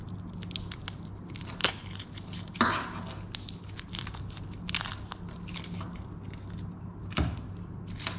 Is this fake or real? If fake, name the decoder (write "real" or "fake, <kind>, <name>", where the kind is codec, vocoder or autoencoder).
real